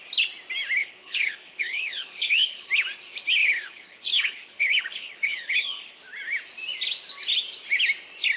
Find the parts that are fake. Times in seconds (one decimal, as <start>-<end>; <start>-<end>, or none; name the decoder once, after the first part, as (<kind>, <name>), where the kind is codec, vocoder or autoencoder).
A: 0.8-2.7 (codec, HILCodec); 3.4-6.0